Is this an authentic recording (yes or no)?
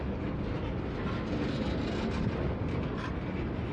yes